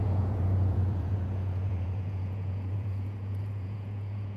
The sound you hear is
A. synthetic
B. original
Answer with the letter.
A